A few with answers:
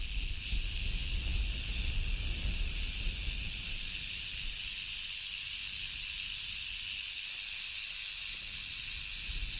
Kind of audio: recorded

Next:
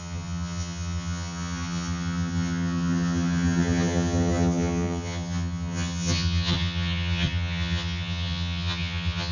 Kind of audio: remade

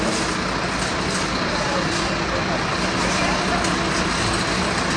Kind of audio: recorded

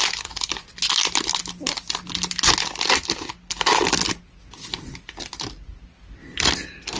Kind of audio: recorded